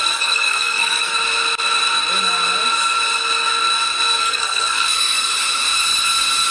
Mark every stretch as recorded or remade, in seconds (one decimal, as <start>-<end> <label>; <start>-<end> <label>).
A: 0.0-1.1 remade; 1.1-4.2 recorded; 4.2-5.3 remade; 5.3-6.5 recorded